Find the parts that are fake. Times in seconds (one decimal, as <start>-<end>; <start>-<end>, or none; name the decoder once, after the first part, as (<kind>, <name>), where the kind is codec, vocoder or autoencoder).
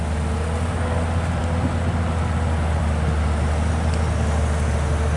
none